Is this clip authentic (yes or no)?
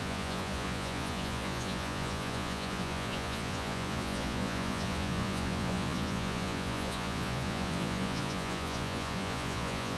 no